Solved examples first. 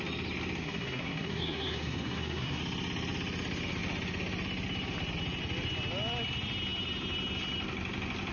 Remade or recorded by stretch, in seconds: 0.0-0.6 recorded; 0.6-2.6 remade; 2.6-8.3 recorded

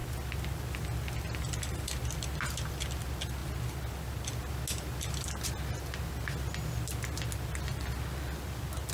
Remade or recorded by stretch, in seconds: 0.0-8.9 recorded

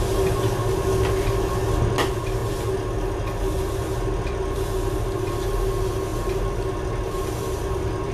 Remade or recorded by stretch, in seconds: 0.0-8.1 recorded

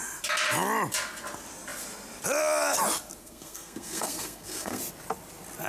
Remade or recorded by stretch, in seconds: 0.0-3.2 recorded; 3.2-4.8 remade; 4.8-5.7 recorded

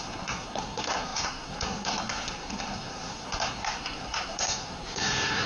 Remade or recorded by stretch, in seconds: 0.0-5.5 remade